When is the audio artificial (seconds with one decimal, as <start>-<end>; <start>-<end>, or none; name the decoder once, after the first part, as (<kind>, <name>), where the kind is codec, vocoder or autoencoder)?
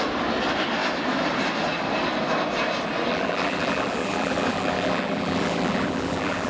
3.1-6.5 (vocoder, BigVGAN v2)